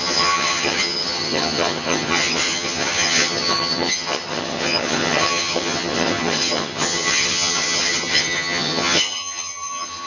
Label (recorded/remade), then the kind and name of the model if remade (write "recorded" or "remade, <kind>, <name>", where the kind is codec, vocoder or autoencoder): remade, vocoder, HiFi-GAN